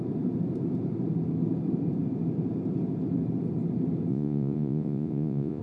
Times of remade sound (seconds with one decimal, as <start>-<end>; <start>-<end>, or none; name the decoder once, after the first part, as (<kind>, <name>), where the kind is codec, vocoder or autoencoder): 4.1-5.6 (vocoder, Vocos)